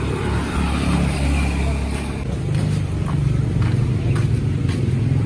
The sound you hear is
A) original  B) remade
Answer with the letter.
A